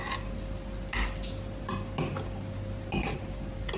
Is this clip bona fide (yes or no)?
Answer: yes